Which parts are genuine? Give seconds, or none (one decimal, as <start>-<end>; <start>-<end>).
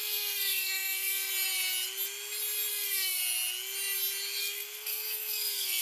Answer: 1.3-2.7; 3.2-4.4